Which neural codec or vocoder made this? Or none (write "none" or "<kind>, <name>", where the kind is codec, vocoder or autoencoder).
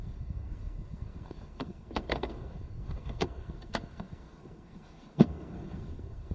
codec, SNAC